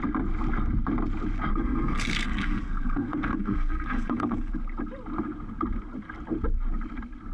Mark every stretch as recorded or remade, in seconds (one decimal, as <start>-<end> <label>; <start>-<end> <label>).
0.0-1.5 recorded; 1.5-4.5 remade; 4.5-7.3 recorded